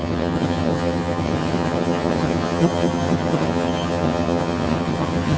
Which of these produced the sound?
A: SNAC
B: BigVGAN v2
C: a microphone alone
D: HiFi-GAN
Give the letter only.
D